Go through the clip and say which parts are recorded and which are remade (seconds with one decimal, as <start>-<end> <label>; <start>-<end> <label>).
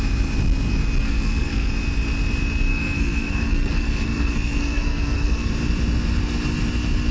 0.0-1.0 recorded; 1.0-1.7 remade; 1.7-2.7 recorded; 2.7-5.5 remade; 5.5-7.1 recorded